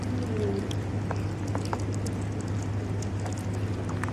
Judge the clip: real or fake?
real